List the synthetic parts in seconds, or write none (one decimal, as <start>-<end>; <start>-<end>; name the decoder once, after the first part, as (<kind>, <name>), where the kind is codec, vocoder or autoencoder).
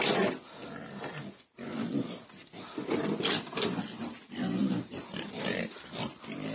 4.6-5.6 (vocoder, BigVGAN v2)